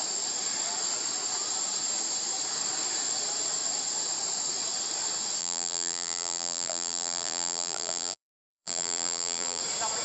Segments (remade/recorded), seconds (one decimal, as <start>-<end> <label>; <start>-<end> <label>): 0.0-5.4 recorded; 5.4-9.6 remade; 9.6-10.0 recorded